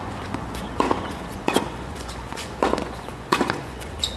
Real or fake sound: fake